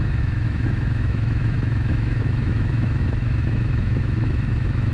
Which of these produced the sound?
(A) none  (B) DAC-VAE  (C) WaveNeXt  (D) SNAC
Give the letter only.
B